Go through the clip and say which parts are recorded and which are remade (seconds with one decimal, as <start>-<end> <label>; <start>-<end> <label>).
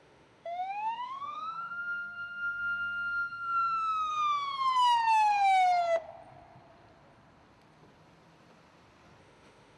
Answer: 0.0-4.1 remade; 4.1-9.2 recorded; 9.2-9.8 remade